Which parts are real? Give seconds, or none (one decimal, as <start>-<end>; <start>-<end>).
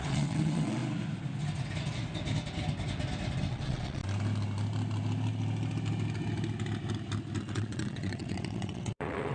0.8-3.5; 4.0-7.4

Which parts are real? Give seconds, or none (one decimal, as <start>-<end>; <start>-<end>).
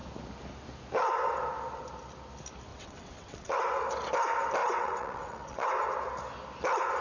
0.0-2.7; 3.6-4.6; 5.7-7.0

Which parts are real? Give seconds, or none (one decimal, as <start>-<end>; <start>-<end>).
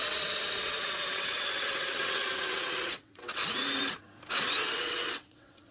3.4-4.3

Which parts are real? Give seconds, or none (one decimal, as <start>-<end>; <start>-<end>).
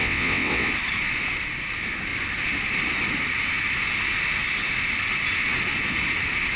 0.7-6.6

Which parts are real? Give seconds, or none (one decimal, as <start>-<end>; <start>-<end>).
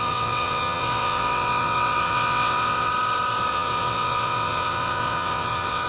2.9-3.5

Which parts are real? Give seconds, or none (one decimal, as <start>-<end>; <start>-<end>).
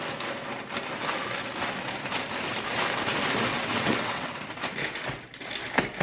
0.0-3.5; 4.3-6.0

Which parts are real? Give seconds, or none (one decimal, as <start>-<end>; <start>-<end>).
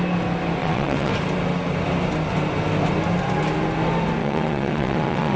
0.0-0.6; 1.1-4.2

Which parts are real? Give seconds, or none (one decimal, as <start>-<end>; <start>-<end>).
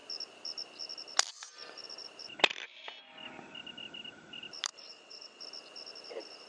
0.0-4.7; 5.4-6.5